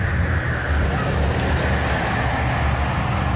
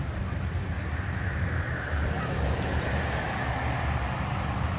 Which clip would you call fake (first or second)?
second